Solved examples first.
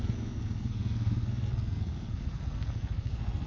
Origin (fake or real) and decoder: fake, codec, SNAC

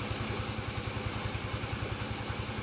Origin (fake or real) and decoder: real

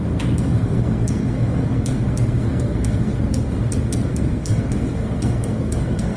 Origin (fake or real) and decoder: fake, codec, SNAC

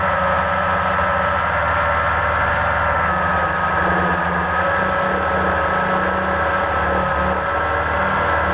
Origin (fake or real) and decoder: real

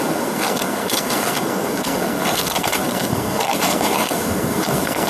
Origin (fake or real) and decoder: fake, codec, SNAC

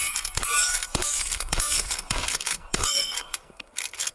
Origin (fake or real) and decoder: fake, codec, SNAC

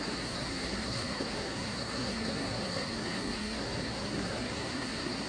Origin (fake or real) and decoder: fake, codec, SNAC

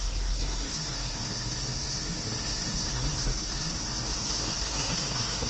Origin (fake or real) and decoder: fake, codec, SNAC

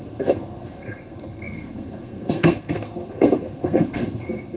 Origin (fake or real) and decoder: fake, codec, SNAC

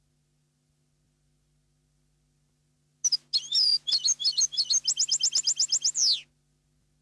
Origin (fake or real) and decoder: real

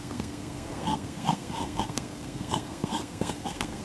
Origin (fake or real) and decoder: fake, codec, SNAC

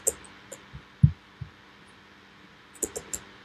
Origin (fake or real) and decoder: real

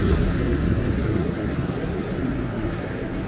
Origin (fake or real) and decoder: fake, codec, SNAC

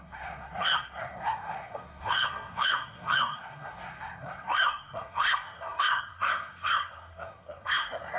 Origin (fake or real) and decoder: fake, codec, SNAC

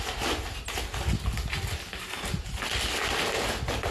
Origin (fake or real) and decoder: real